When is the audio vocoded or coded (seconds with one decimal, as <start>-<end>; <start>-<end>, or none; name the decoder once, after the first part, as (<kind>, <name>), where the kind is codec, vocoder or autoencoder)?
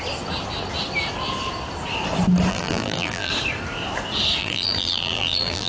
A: 2.5-3.3 (vocoder, BigVGAN v2); 4.4-5.7